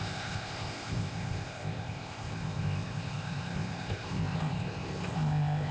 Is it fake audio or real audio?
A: fake